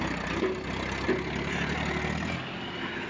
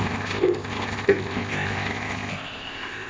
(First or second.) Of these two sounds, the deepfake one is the second